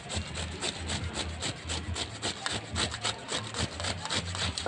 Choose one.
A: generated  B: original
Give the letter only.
B